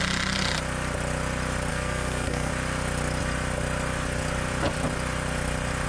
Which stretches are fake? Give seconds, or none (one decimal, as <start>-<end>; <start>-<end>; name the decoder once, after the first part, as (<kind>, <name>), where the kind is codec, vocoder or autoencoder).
1.7-2.5 (codec, SNAC)